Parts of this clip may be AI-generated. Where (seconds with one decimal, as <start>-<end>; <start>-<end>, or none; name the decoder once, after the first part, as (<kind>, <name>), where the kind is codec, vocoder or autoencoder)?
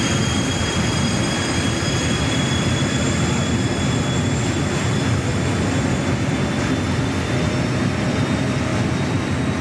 0.0-5.3 (vocoder, BigVGAN v2); 8.1-8.7